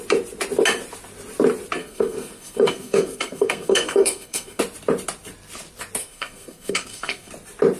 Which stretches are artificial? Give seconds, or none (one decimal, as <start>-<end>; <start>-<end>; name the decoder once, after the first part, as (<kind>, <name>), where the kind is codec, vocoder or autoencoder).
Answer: 1.8-4.6 (codec, SNAC); 6.0-7.3